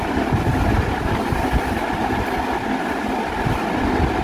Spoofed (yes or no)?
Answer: no